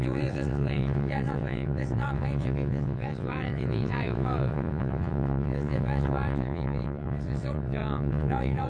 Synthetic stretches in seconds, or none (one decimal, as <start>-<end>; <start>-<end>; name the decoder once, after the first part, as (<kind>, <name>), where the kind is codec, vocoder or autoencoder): 0.0-8.7 (vocoder, WaveNeXt)